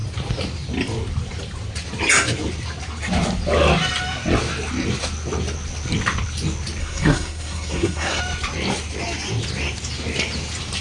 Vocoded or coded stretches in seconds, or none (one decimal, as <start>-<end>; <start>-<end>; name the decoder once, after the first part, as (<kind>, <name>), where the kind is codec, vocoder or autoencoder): 6.8-8.2 (codec, SNAC)